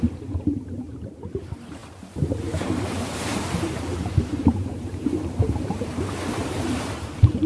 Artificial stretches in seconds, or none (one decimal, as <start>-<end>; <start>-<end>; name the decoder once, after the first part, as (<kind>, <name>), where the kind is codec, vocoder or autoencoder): 0.0-7.5 (vocoder, BigVGAN v2)